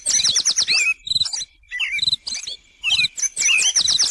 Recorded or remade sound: recorded